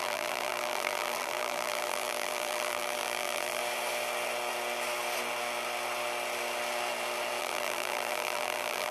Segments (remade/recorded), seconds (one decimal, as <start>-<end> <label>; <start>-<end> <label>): 0.0-3.6 remade; 3.6-7.4 recorded; 7.4-8.9 remade

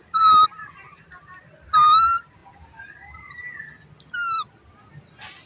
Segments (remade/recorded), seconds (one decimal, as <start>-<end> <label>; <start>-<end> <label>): 0.0-5.5 recorded

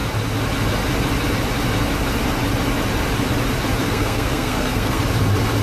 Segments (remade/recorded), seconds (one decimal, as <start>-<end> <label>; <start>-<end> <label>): 0.0-3.8 recorded; 3.8-5.0 remade; 5.0-5.6 recorded

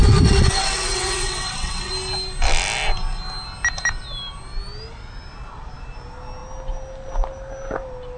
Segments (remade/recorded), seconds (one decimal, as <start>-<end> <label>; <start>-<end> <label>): 0.0-1.9 remade; 1.9-8.2 recorded

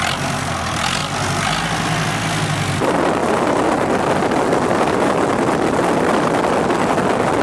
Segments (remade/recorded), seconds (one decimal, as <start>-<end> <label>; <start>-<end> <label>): 0.0-7.4 recorded